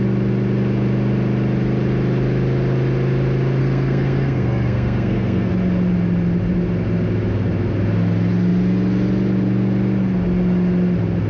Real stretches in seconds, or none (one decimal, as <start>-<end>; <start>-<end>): 0.0-3.6; 5.5-11.3